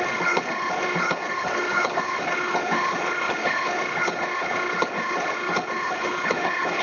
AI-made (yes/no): yes